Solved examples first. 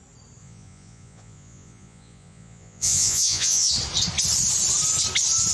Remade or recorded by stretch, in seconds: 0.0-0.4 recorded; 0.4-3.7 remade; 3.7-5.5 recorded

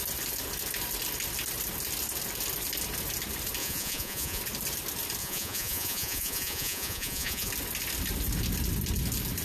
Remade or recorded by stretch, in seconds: 0.0-3.6 recorded; 3.6-4.4 remade; 4.4-5.2 recorded; 5.2-7.5 remade; 7.5-9.4 recorded

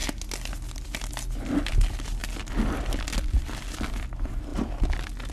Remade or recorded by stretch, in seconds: 0.0-5.3 recorded

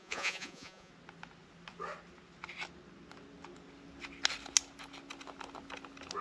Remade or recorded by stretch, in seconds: 0.0-0.9 remade; 0.9-6.2 recorded

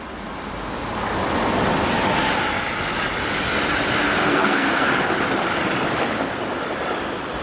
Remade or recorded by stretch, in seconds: 0.0-4.2 recorded; 4.2-4.9 remade; 4.9-7.4 recorded

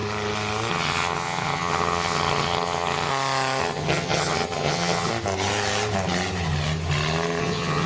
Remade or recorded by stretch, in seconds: 0.0-0.7 recorded; 0.7-3.1 remade; 3.1-3.6 recorded; 3.6-5.1 remade; 5.1-7.4 recorded; 7.4-7.9 remade